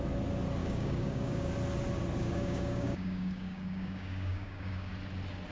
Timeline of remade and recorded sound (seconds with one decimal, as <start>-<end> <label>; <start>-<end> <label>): 0.0-0.6 recorded; 0.6-1.5 remade; 1.5-2.2 recorded; 2.2-4.9 remade; 4.9-5.5 recorded

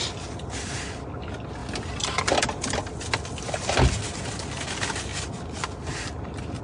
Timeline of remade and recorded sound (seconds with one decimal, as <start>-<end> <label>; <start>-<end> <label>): 0.0-6.6 recorded

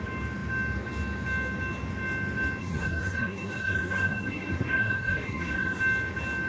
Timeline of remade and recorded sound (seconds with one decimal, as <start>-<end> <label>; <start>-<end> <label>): 0.0-2.6 recorded; 2.6-5.8 remade; 5.8-6.5 recorded

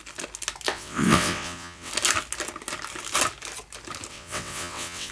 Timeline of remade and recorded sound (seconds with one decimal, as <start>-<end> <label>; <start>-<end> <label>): 0.0-0.7 recorded; 0.7-1.9 remade; 1.9-4.1 recorded; 4.1-5.1 remade

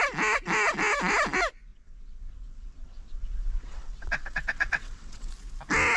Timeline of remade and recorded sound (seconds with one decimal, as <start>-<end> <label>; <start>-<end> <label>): 0.0-1.7 recorded; 1.7-5.3 remade; 5.3-6.0 recorded

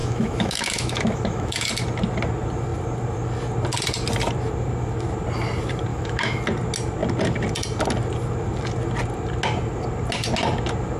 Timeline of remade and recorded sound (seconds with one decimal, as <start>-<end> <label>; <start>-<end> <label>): 0.0-1.7 remade; 1.7-5.9 recorded; 5.9-6.4 remade; 6.4-11.0 recorded

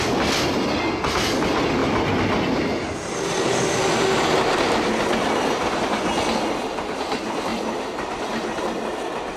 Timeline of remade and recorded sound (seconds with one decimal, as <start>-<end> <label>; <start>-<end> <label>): 0.0-9.4 recorded

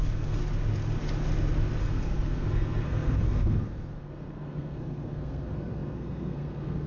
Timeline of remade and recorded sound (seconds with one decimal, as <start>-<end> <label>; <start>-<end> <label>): 0.0-0.4 remade; 0.4-1.8 recorded; 1.8-6.9 remade